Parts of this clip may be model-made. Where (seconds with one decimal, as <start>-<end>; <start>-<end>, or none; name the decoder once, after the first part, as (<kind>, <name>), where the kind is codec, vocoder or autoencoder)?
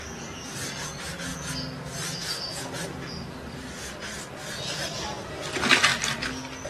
none